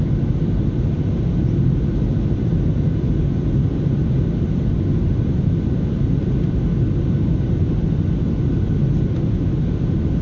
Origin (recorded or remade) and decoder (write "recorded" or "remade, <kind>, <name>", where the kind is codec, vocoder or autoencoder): recorded